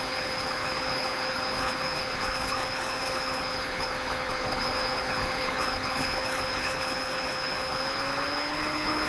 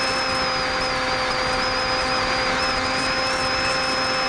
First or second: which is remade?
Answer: first